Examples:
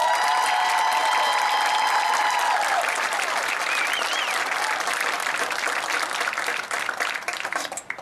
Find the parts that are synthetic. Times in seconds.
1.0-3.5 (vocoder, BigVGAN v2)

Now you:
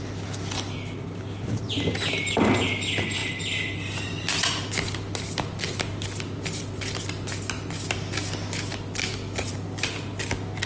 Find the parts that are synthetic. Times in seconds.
none

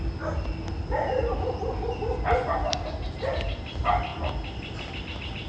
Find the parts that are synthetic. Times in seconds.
none

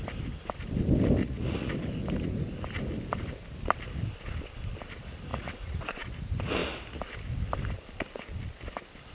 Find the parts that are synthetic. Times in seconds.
1.2-1.7 (vocoder, Vocos); 5.3-6.1

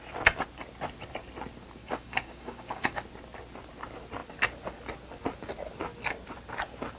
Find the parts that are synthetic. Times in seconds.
1.8-3.0 (codec, DAC)

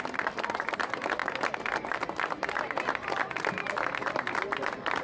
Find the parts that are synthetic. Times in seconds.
0.0-1.2 (vocoder, BigVGAN v2); 1.9-5.0